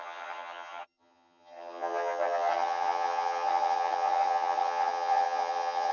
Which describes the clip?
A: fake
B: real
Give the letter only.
A